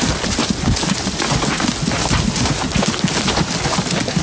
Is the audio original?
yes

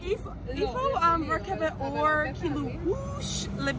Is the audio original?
yes